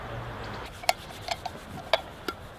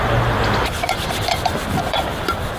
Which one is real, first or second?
first